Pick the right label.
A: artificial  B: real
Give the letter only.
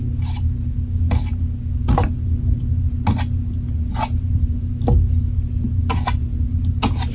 B